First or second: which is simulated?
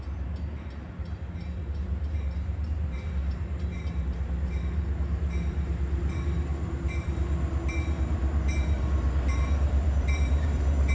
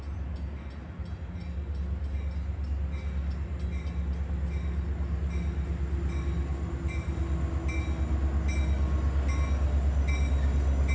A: first